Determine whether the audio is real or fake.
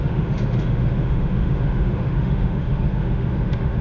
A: fake